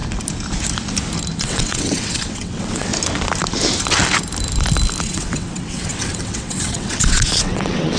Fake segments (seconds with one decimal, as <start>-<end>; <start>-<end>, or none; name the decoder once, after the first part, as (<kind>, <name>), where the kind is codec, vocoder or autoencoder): 1.4-2.9 (vocoder, WaveNeXt); 5.0-8.0